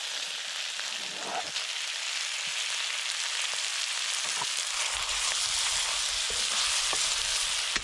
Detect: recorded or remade recorded